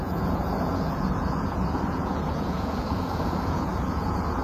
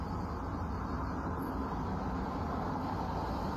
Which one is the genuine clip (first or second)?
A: second